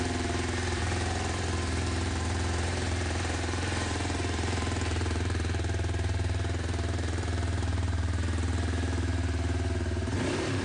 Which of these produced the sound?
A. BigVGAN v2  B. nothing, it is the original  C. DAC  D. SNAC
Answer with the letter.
A